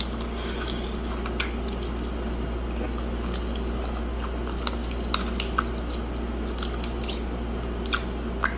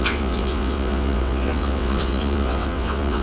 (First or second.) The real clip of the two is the first